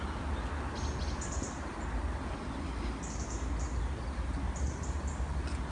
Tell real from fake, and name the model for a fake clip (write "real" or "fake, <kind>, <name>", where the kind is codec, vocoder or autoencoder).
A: real